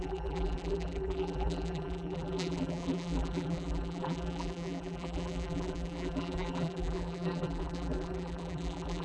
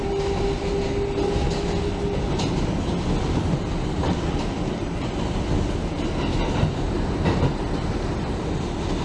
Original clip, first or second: second